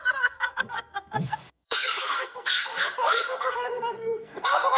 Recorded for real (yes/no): no